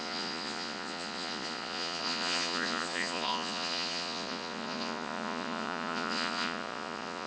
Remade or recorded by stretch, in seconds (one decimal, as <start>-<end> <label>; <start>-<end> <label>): 0.0-7.3 remade